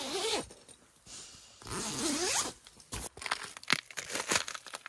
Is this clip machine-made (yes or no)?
no